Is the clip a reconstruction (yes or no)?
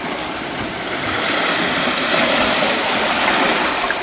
no